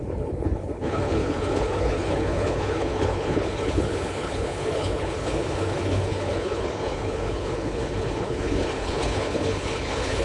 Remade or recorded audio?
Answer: remade